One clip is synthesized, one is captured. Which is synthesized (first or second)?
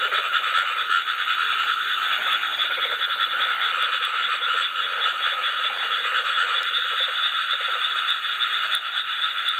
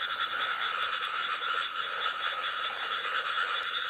first